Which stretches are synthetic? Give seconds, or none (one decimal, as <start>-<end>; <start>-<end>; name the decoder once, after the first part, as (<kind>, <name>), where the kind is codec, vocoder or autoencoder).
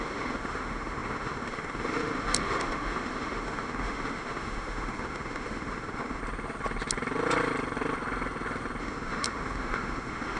0.0-6.2 (autoencoder, DAC-VAE); 8.8-10.4